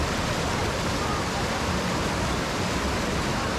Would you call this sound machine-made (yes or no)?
no